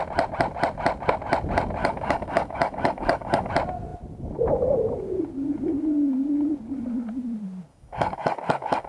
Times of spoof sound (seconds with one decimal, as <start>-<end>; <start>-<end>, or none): 1.8-3.5; 7.7-8.9